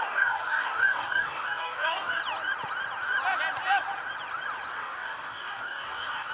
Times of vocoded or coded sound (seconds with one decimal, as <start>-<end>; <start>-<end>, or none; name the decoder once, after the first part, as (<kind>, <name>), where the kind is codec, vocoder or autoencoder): 0.0-2.2 (codec, DAC); 4.7-6.3